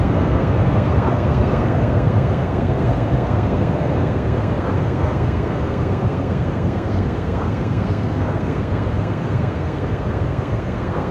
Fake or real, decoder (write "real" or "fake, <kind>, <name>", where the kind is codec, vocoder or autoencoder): fake, codec, SNAC